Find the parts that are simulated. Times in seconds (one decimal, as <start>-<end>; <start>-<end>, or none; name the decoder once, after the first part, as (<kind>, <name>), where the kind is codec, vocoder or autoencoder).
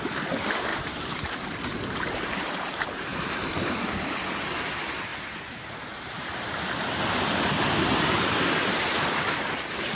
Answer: 0.7-3.3 (vocoder, BigVGAN v2); 5.1-6.3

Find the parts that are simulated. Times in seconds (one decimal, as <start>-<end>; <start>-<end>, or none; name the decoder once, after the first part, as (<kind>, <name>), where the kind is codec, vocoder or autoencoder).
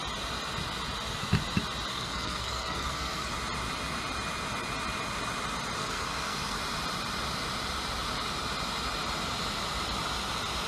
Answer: 1.9-3.3 (codec, SNAC); 5.8-6.6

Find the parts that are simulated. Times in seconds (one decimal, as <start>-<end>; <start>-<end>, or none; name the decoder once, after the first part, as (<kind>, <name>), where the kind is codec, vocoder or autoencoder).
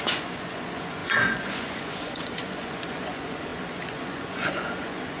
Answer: 0.0-5.2 (vocoder, Vocos)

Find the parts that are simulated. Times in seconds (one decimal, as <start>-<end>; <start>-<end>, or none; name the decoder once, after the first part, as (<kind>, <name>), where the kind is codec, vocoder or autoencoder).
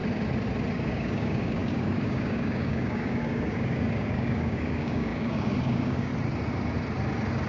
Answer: 0.7-6.1 (codec, DAC)